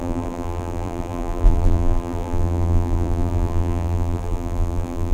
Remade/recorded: remade